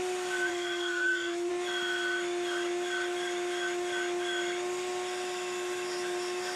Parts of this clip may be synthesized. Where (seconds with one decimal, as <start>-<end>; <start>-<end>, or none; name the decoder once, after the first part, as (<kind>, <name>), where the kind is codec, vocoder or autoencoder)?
0.5-1.5 (codec, SNAC)